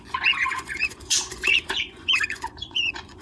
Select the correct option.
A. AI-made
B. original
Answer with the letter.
A